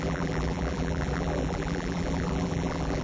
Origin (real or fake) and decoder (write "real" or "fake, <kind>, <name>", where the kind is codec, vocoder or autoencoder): fake, vocoder, BigVGAN v2